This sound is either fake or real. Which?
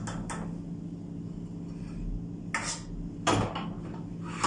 real